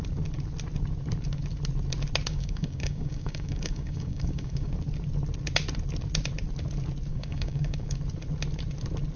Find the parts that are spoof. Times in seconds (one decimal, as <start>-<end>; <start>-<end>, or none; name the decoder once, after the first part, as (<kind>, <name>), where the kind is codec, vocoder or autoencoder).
2.3-4.7 (codec, DAC); 7.1-8.0